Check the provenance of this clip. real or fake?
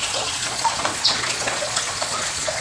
fake